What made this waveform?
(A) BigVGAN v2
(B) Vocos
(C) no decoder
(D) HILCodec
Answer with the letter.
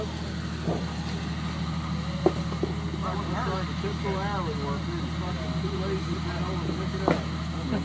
C